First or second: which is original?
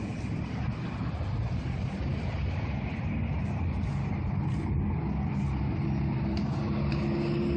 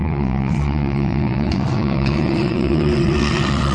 first